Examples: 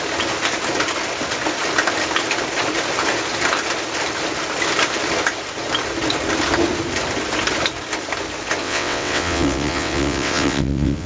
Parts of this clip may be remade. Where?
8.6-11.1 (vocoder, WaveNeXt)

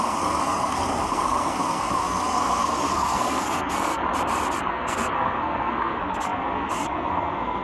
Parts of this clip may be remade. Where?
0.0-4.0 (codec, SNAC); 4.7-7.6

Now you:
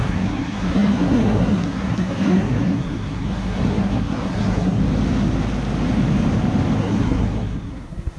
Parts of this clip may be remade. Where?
0.0-4.8 (codec, SNAC); 6.8-8.2

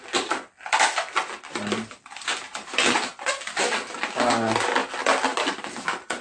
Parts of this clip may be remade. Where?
none

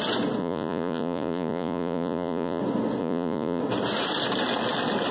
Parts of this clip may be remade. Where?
0.4-2.6 (vocoder, Vocos); 3.0-3.6

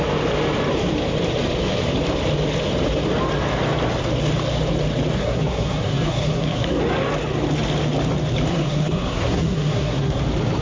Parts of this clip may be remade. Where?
5.2-6.8 (codec, SNAC); 8.5-10.2

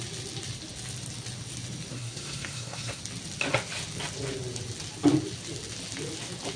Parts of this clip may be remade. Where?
1.9-3.0 (codec, SNAC)

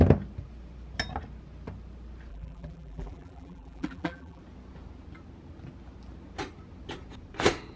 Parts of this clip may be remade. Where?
2.3-4.4 (vocoder, BigVGAN v2)